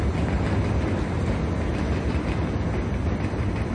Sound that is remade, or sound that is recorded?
recorded